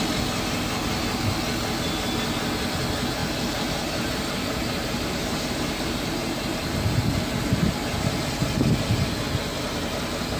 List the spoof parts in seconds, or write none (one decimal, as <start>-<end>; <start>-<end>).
3.2-7.3